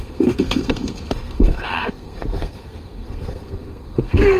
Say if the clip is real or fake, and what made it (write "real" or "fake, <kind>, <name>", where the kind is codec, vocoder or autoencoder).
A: fake, codec, SNAC